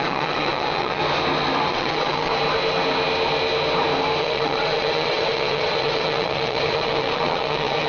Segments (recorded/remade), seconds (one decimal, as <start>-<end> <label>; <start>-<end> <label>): 0.0-1.0 remade; 1.0-1.7 recorded; 1.7-2.3 remade; 2.3-4.2 recorded; 4.2-7.9 remade